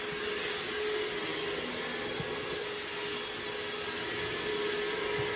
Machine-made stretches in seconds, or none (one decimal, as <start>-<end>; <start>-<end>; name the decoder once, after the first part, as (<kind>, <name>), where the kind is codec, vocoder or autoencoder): none